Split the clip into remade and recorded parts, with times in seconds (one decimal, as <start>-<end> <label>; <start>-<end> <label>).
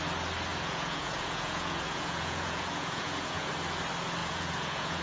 0.0-0.5 recorded; 0.5-3.5 remade; 3.5-4.2 recorded; 4.2-5.0 remade